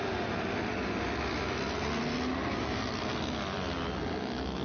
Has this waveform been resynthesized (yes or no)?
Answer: no